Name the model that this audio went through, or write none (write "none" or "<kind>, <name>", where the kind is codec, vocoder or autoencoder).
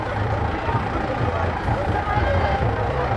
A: none